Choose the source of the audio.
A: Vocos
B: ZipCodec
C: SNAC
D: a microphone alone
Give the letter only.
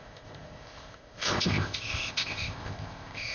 B